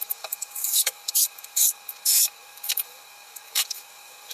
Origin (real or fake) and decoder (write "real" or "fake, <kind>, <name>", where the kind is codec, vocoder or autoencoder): fake, codec, DAC